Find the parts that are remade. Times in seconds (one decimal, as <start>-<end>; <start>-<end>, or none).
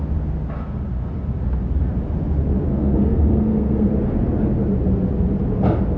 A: 2.7-3.9